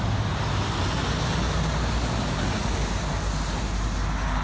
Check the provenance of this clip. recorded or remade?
recorded